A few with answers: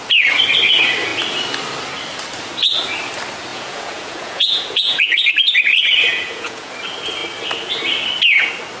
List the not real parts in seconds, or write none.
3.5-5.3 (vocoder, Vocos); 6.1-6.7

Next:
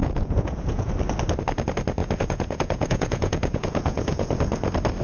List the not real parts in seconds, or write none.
0.0-0.9 (vocoder, Vocos); 2.0-4.4

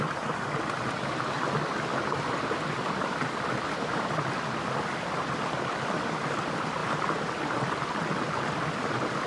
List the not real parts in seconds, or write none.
none

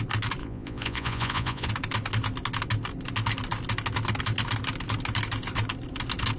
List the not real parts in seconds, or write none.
0.4-1.7 (vocoder, Vocos)

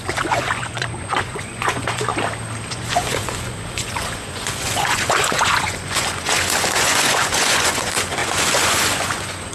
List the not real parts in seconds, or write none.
0.0-2.1 (vocoder, Vocos); 2.7-9.5

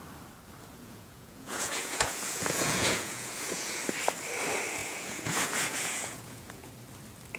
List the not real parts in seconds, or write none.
0.7-3.8 (vocoder, Vocos); 4.8-6.7

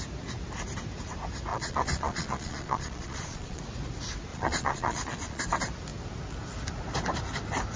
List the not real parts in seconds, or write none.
1.5-3.6 (vocoder, Vocos); 4.3-5.4

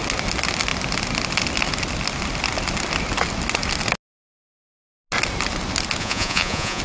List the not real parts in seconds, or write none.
6.0-6.8 (vocoder, Vocos)